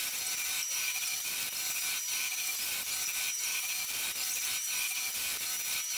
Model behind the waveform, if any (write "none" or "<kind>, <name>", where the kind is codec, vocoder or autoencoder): none